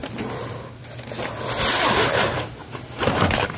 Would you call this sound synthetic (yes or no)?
no